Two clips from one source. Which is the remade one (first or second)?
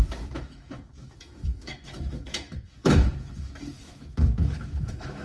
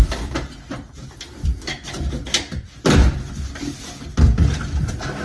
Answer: first